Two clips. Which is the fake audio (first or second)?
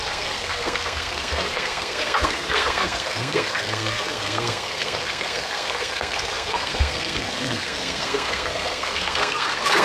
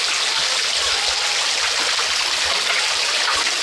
first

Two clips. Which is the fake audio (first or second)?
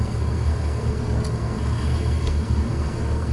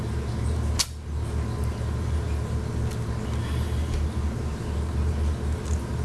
first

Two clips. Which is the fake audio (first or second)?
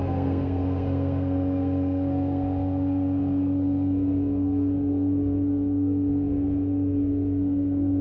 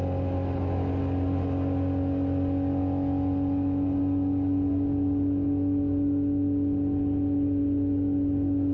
first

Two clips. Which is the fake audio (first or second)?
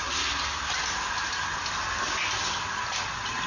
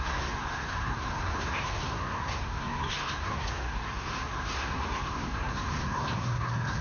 second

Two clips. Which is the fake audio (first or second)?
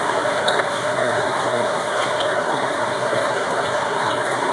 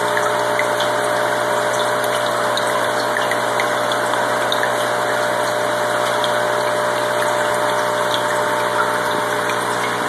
first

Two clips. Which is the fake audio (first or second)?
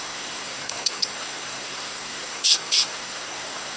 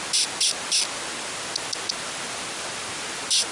first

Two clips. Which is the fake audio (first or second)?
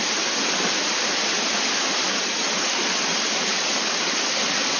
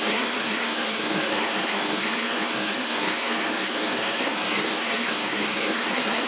second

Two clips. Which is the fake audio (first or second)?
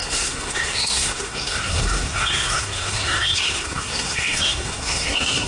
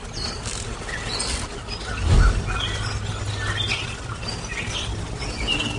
first